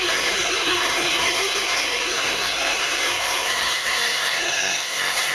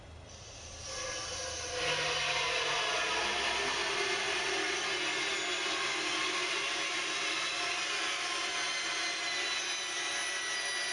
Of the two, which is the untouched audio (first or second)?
second